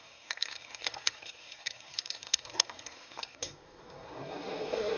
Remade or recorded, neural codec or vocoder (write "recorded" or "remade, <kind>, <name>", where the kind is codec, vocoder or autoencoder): remade, codec, SNAC